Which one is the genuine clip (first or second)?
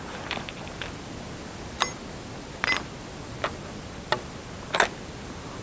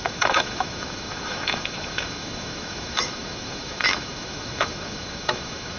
first